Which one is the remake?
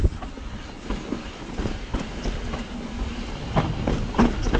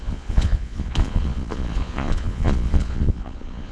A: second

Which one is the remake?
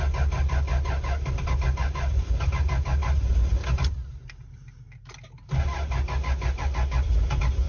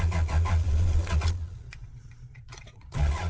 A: second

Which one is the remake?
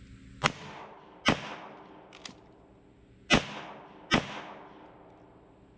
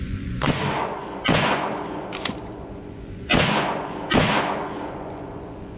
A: second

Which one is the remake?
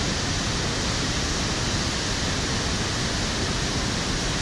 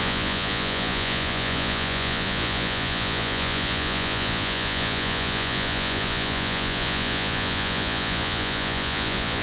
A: second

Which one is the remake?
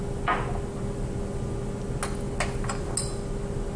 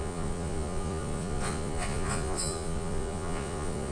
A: second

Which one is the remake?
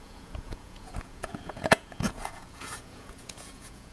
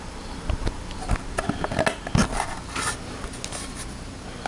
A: first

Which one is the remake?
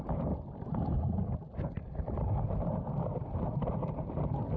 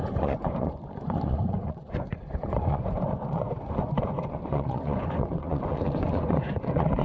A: second